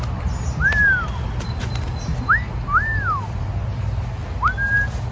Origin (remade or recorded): recorded